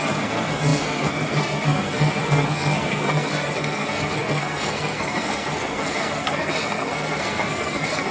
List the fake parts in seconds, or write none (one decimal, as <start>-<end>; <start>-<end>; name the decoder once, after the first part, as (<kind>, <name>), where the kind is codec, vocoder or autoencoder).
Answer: 0.0-8.1 (codec, SNAC)